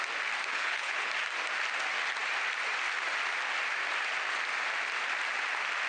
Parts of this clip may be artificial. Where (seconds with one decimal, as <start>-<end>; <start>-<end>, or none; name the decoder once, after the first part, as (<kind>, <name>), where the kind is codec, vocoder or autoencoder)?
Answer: 0.5-1.1 (codec, HILCodec)